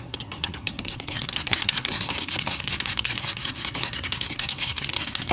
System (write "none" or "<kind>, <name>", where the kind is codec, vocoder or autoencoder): codec, SNAC